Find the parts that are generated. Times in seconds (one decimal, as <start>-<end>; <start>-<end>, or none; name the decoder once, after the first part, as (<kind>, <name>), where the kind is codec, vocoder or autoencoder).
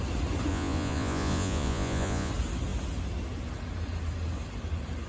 0.5-2.3 (vocoder, Vocos)